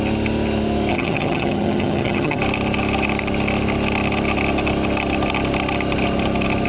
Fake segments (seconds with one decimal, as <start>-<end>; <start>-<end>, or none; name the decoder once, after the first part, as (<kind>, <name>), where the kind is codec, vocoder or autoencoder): 0.9-2.4 (vocoder, HiFi-GAN)